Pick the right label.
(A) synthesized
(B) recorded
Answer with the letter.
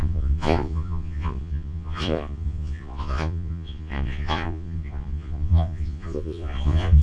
A